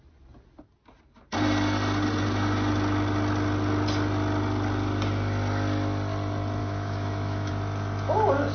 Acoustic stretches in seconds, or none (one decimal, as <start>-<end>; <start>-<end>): 0.0-6.6; 7.5-8.5